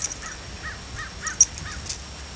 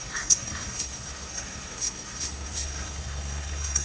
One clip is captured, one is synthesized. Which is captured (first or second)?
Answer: first